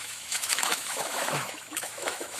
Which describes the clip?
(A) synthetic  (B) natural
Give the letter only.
A